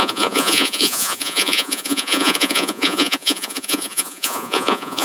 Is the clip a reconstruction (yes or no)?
yes